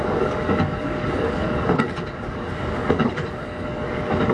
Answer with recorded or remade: remade